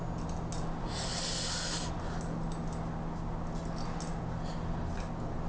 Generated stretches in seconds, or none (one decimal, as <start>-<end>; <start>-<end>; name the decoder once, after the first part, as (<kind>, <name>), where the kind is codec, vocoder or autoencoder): none